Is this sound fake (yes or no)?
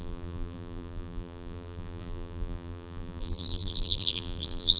yes